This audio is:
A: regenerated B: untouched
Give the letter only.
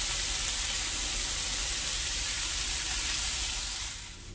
B